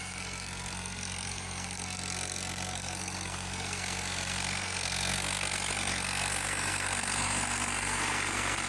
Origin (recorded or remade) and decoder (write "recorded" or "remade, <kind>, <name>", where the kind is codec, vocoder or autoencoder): remade, codec, SNAC